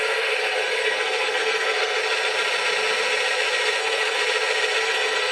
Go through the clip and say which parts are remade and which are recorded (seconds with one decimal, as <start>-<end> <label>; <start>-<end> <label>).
0.0-2.0 remade; 2.0-3.8 recorded; 3.8-4.2 remade; 4.2-4.8 recorded; 4.8-5.3 remade